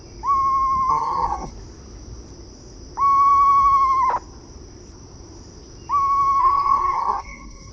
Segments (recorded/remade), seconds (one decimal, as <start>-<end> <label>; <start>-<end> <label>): 0.0-0.9 recorded; 0.9-1.5 remade; 1.5-6.4 recorded; 6.4-7.7 remade